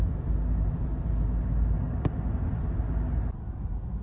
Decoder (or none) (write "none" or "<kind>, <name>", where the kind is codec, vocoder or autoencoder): none